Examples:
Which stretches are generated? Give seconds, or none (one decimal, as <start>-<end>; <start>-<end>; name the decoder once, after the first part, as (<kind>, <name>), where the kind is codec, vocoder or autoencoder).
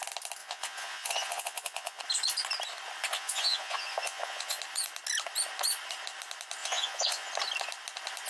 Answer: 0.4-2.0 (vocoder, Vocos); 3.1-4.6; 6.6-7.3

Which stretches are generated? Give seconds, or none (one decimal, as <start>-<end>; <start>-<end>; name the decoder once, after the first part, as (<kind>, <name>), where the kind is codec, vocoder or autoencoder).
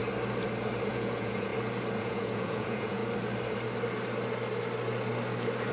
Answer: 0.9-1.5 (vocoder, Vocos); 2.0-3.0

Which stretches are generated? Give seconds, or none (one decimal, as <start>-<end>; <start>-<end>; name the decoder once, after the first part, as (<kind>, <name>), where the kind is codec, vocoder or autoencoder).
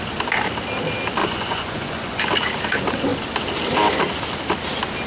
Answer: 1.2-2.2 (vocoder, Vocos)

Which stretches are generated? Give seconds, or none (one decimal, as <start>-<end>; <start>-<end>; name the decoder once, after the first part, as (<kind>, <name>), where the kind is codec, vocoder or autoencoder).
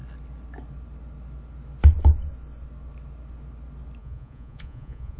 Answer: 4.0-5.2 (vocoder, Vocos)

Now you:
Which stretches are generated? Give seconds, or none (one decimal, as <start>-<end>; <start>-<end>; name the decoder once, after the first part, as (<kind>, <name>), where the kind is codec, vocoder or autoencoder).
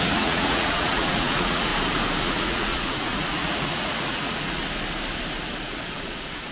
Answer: 0.0-1.7 (vocoder, Vocos); 2.2-4.6; 5.9-6.5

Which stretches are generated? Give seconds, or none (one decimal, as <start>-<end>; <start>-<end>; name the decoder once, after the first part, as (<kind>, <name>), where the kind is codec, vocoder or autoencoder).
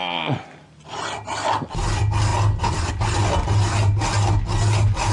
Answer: none